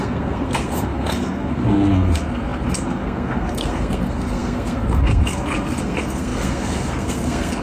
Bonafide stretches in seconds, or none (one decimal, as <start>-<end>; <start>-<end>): none